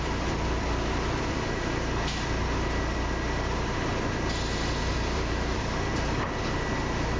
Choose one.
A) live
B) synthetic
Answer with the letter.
B